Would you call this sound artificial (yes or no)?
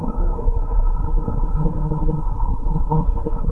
yes